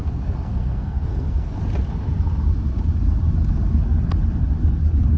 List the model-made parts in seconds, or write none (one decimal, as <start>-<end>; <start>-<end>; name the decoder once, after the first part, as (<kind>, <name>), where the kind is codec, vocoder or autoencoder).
0.0-1.6 (codec, SNAC)